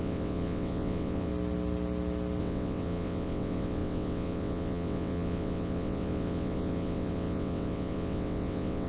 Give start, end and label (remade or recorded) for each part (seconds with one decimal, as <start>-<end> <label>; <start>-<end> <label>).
0.0-1.3 remade; 1.3-2.4 recorded; 2.4-8.9 remade